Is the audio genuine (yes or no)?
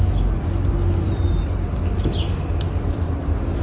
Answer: yes